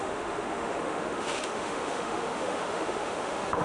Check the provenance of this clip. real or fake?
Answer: fake